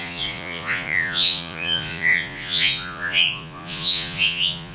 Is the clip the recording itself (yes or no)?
no